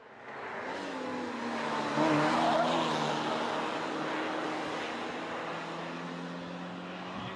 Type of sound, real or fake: real